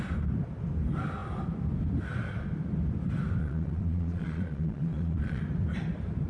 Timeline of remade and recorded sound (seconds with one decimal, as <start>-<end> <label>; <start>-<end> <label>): 0.0-3.4 recorded; 3.4-5.4 remade; 5.4-6.3 recorded